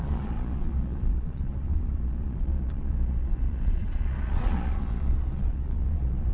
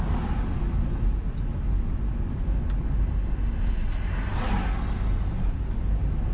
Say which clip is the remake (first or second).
first